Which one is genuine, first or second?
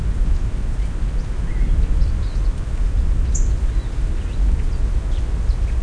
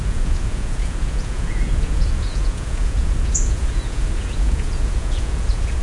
first